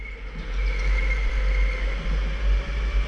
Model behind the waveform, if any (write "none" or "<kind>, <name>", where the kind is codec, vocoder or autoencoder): none